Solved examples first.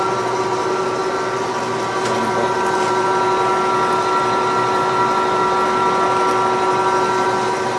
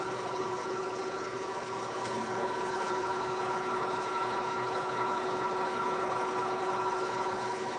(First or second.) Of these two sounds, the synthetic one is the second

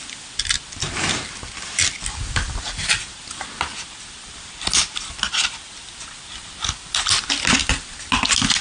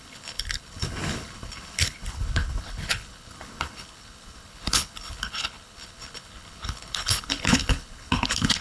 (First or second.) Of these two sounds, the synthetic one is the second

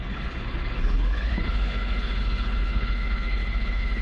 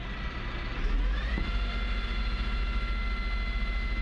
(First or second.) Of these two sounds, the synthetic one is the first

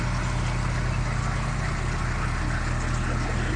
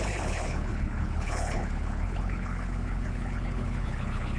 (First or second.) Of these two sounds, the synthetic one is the second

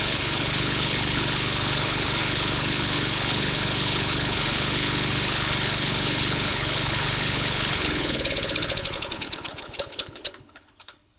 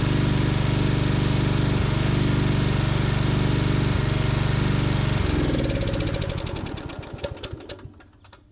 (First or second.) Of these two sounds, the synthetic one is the first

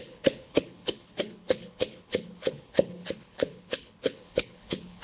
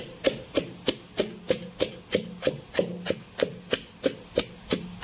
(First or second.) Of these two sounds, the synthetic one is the first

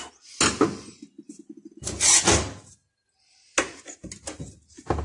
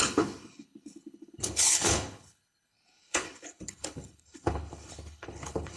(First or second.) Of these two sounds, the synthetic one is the second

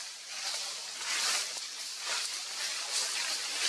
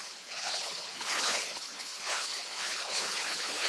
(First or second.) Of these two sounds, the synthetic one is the second